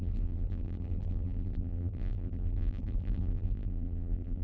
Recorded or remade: remade